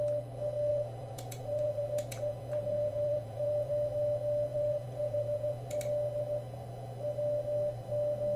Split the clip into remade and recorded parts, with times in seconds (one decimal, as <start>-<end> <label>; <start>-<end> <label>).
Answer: 0.0-0.7 recorded; 0.7-3.7 remade; 3.7-4.5 recorded; 4.5-5.8 remade; 5.8-8.4 recorded

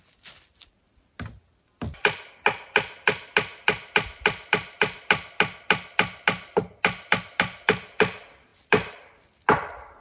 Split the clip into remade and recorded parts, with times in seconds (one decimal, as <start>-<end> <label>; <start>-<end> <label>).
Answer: 0.0-10.0 recorded

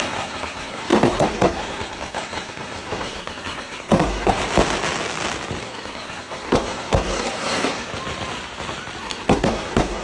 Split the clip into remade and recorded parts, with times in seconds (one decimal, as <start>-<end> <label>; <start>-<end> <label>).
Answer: 0.0-4.4 remade; 4.4-5.6 recorded; 5.6-7.9 remade; 7.9-9.0 recorded; 9.0-10.0 remade

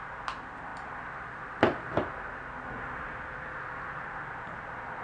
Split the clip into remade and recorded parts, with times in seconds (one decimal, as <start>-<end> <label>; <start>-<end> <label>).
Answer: 0.0-5.0 recorded

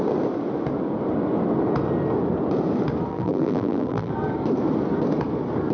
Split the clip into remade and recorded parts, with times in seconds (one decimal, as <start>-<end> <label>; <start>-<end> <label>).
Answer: 0.0-3.1 recorded; 3.1-4.1 remade; 4.1-5.7 recorded